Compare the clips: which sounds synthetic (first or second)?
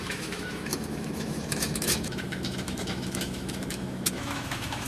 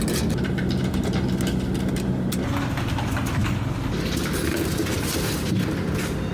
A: first